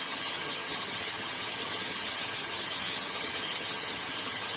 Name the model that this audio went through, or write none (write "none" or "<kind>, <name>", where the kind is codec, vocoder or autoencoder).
vocoder, HiFi-GAN